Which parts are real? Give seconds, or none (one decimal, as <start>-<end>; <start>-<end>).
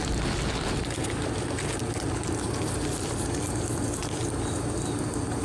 0.0-5.4